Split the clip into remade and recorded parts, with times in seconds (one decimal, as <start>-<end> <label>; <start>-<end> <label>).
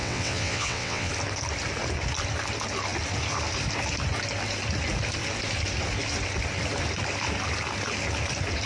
0.0-1.1 remade; 1.1-8.7 recorded